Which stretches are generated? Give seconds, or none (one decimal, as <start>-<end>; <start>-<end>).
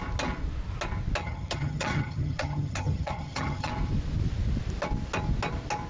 1.2-3.7